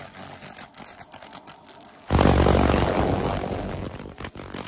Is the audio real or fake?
real